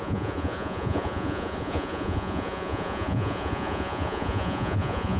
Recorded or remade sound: remade